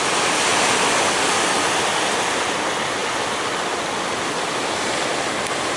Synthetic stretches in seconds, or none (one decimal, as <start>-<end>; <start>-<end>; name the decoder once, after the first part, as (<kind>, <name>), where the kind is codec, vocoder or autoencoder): none

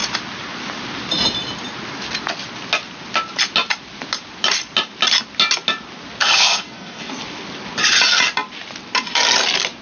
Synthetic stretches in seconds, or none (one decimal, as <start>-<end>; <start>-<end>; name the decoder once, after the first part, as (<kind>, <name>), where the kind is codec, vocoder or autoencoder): 6.2-7.1 (codec, SNAC)

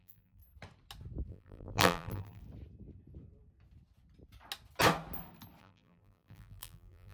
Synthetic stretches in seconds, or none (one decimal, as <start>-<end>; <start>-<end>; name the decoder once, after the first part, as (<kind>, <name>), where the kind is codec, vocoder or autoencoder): 0.0-0.4 (vocoder, BigVGAN v2); 1.3-2.4; 5.6-7.1

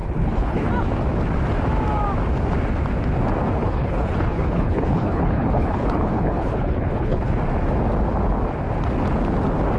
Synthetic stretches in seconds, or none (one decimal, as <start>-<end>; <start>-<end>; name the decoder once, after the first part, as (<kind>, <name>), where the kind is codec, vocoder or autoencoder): 0.0-0.7 (codec, HILCodec); 3.6-7.3

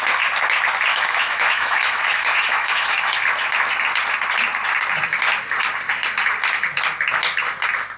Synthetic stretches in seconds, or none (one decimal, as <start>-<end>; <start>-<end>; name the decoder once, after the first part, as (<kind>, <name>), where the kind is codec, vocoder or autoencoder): 0.9-3.3 (autoencoder, DAC-VAE)

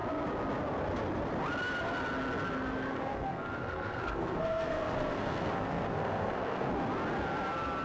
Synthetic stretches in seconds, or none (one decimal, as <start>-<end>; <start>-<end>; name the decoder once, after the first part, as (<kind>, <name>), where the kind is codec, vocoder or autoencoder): 2.9-6.7 (codec, SNAC)

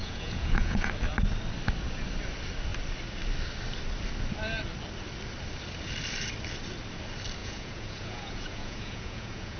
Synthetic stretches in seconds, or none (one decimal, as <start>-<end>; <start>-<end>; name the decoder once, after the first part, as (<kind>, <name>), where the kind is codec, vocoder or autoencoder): 0.0-0.9 (vocoder, Vocos); 7.4-9.6

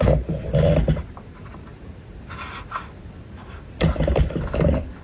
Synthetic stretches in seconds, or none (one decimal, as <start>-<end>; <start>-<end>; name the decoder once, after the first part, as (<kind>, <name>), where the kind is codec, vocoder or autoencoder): 1.7-4.1 (vocoder, BigVGAN v2)